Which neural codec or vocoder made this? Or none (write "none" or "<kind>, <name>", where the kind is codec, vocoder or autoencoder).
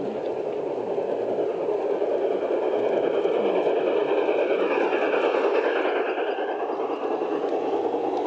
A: none